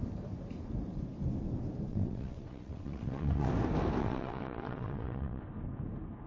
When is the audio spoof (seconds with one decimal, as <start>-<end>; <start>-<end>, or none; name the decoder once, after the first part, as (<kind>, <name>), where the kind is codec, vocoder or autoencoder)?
1.9-3.5 (vocoder, WaveNeXt); 4.0-5.4